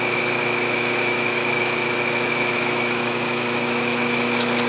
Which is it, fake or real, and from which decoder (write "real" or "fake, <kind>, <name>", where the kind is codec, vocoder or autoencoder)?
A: fake, autoencoder, DAC-VAE